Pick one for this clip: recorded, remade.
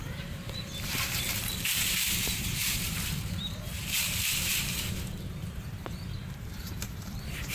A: remade